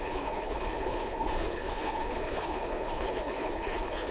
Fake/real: fake